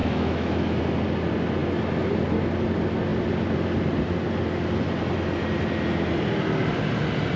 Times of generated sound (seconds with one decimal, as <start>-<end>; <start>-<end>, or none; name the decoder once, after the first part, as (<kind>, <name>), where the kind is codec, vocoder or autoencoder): 0.0-0.8 (autoencoder, DAC-VAE)